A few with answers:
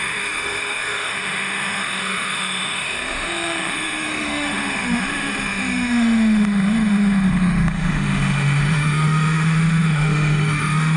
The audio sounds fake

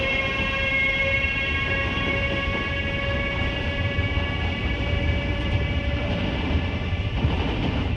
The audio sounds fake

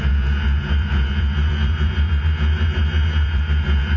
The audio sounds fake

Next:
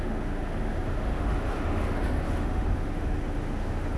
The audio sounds fake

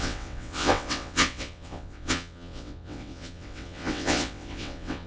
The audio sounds fake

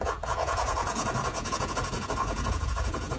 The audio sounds fake